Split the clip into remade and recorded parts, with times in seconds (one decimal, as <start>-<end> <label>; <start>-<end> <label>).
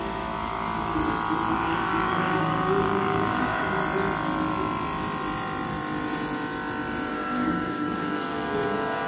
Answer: 0.0-1.0 remade; 1.0-1.5 recorded; 1.5-3.8 remade; 3.8-7.1 recorded; 7.1-9.1 remade